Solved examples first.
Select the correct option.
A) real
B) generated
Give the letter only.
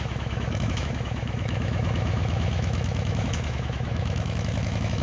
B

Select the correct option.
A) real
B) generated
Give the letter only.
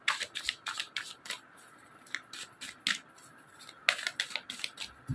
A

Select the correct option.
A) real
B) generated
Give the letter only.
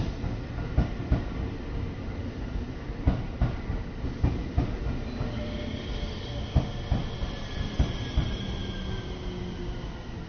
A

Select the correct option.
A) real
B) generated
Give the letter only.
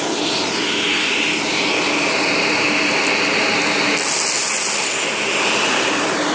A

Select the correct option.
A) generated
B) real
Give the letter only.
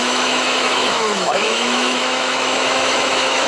A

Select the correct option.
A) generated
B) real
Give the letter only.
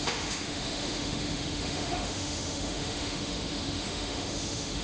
A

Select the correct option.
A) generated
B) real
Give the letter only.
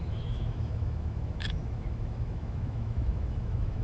A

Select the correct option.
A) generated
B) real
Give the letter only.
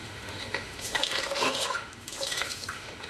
A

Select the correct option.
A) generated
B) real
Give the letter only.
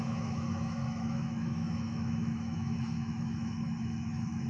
A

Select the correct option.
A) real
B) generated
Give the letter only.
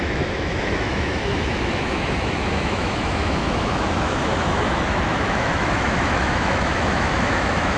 B